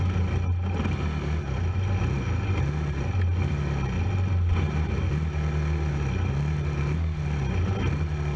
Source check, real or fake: real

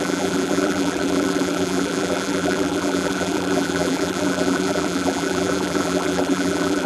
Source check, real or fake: fake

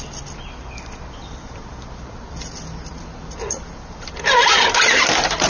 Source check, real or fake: fake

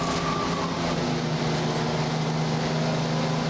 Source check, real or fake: real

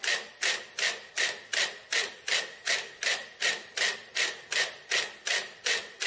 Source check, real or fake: real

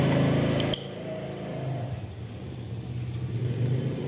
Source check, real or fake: real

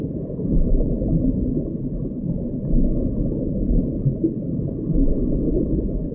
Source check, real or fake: fake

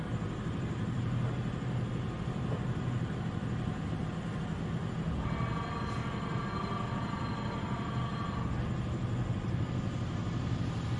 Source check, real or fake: real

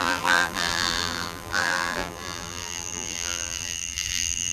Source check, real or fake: fake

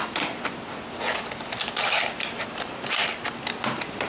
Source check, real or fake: real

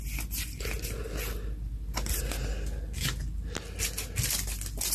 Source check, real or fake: real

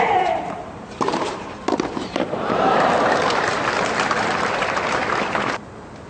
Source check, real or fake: fake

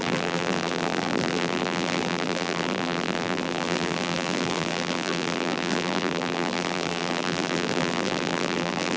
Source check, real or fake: fake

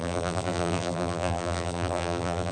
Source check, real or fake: fake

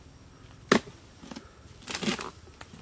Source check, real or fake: real